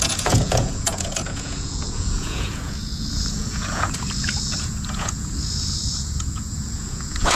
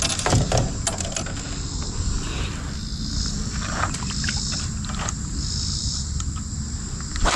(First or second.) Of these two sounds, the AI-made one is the first